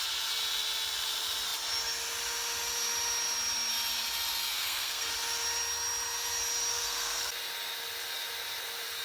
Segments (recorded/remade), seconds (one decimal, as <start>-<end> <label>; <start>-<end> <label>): 0.0-4.4 recorded; 4.4-5.1 remade; 5.1-6.7 recorded; 6.7-7.3 remade; 7.3-9.0 recorded